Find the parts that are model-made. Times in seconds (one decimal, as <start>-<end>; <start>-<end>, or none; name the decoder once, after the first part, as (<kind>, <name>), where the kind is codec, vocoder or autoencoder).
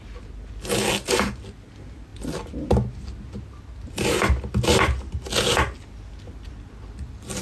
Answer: none